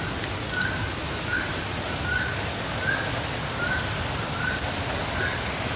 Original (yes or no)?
yes